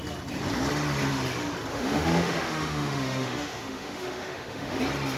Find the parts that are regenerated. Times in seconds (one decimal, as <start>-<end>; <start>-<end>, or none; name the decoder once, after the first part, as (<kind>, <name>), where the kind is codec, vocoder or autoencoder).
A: 1.7-4.8 (autoencoder, DAC-VAE)